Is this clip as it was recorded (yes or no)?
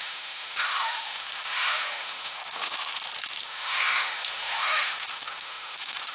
no